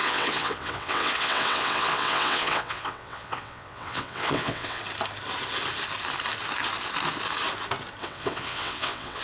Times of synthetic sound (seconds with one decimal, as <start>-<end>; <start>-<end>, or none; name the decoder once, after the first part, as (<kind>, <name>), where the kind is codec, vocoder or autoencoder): 0.0-4.8 (vocoder, WaveNeXt); 8.0-9.2